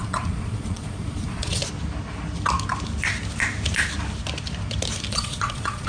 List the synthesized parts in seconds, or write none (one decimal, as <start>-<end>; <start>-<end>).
0.0-1.6; 5.1-5.9